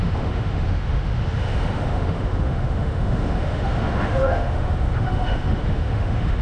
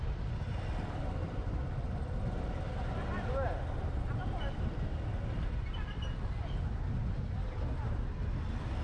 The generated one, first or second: first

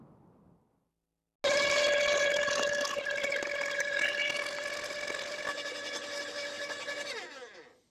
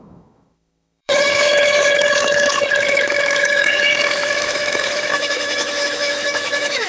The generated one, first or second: second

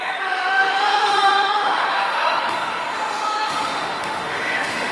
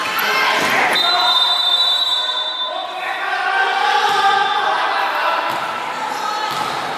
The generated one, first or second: first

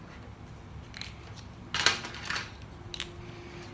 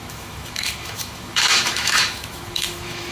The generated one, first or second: second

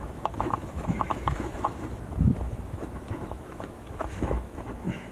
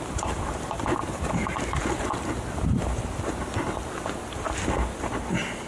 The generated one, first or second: first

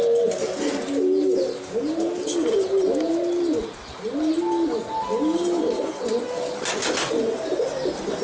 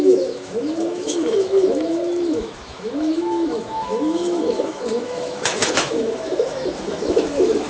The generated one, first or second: second